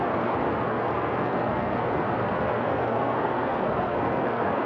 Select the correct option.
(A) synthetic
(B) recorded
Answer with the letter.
A